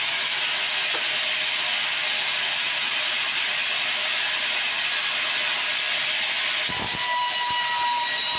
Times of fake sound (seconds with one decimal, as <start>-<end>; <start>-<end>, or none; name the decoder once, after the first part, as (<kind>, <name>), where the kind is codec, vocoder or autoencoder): none